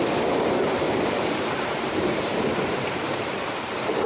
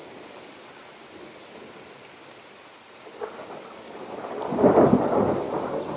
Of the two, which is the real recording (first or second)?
second